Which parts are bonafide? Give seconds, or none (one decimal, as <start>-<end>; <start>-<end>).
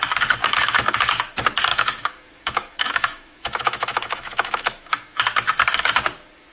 0.0-0.4; 1.0-1.7; 5.2-6.5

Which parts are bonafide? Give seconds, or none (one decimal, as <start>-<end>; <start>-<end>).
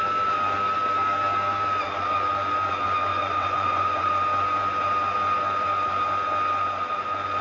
0.0-3.1; 4.1-7.4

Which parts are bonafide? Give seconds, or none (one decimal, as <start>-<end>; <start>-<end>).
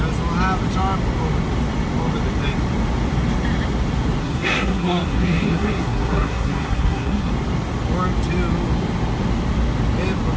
0.0-4.2; 7.3-10.4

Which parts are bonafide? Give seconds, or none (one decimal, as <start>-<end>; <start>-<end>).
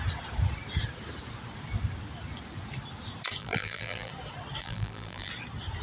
0.0-3.4; 4.1-4.6; 5.3-5.8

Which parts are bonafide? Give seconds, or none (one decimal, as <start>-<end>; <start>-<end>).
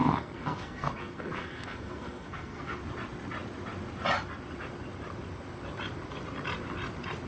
2.8-7.3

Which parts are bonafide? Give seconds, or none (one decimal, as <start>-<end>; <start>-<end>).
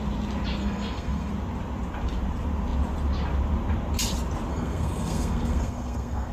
0.0-0.6; 1.3-4.5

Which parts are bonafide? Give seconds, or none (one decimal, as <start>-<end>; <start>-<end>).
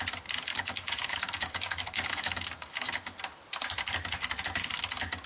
0.0-0.5; 3.2-5.3